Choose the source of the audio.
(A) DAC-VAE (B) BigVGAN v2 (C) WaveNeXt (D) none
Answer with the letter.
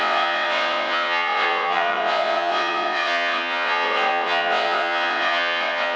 C